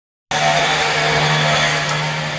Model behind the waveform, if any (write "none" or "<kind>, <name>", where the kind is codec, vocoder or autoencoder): none